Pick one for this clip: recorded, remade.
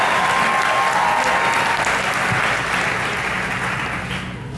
recorded